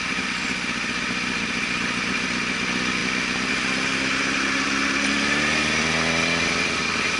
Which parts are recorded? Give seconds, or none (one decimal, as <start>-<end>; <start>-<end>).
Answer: 0.0-7.2